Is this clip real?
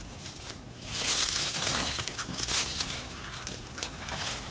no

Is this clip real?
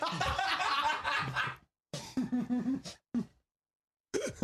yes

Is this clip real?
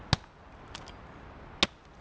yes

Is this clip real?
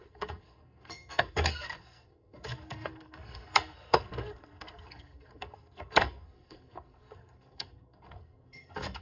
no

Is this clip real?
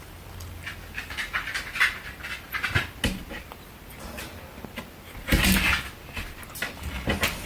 yes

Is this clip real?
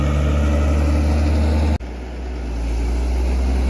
yes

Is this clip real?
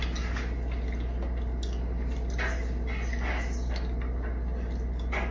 yes